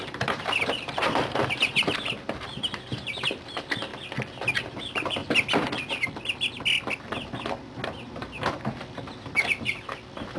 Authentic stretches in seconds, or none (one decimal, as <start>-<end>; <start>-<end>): 3.9-4.6; 5.2-10.4